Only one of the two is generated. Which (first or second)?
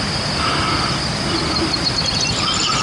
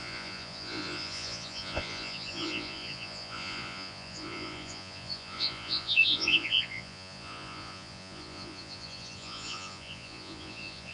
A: second